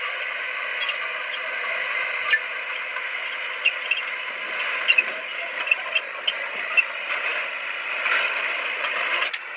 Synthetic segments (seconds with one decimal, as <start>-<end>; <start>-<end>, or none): none